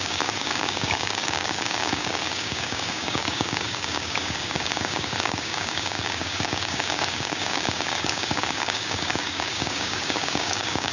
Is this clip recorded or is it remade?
remade